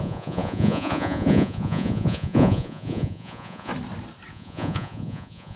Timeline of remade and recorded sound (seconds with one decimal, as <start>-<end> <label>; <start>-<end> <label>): 0.0-3.7 remade; 3.7-4.3 recorded; 4.3-5.6 remade